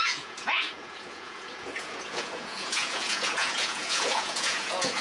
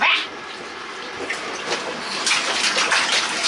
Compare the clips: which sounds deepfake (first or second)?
first